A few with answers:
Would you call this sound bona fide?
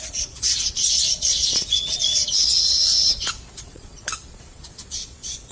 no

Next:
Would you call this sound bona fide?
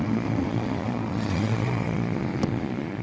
no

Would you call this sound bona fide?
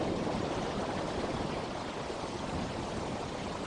yes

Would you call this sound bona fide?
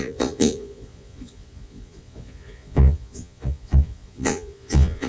no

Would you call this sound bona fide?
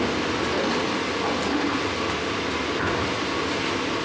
yes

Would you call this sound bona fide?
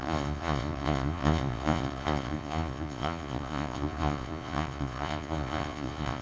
no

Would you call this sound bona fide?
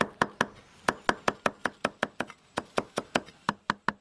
yes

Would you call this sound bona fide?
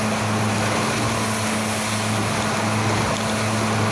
yes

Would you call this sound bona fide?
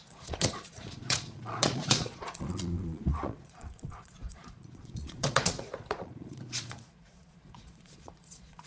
no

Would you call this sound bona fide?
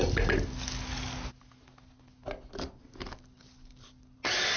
yes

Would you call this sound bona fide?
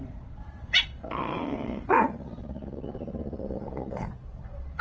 no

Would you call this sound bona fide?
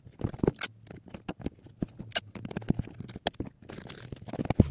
yes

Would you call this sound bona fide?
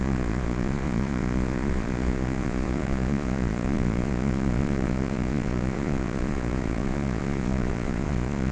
no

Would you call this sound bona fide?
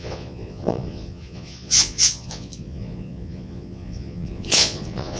no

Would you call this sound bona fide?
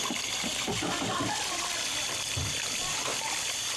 yes